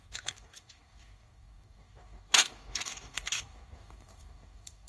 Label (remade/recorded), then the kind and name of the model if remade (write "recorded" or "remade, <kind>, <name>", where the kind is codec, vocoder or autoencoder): remade, codec, DAC